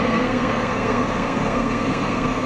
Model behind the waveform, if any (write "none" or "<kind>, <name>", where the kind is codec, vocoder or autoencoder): codec, SNAC